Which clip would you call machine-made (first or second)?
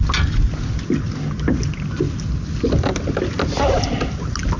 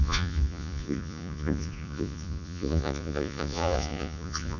second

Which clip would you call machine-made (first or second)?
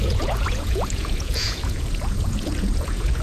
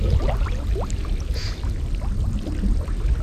first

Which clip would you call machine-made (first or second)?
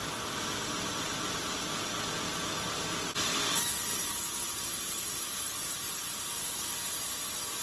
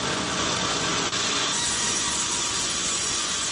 second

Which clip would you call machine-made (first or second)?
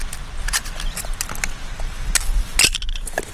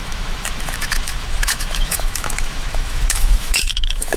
second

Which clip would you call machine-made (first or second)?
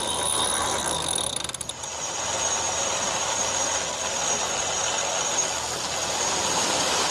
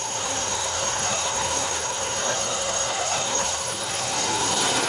second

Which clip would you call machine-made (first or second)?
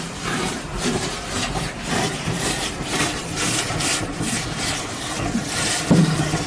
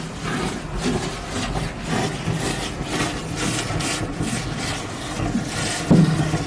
first